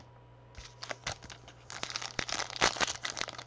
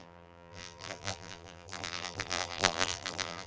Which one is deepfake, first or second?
second